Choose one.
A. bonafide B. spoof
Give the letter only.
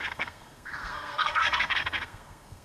B